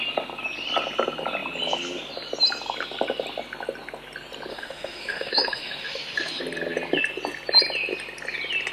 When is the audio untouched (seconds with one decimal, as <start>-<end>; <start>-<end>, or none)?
0.0-4.5; 6.4-8.7